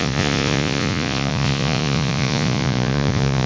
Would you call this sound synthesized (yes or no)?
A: yes